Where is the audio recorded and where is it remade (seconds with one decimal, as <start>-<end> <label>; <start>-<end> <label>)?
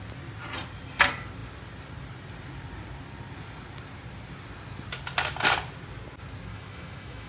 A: 0.0-6.5 recorded; 6.5-7.3 remade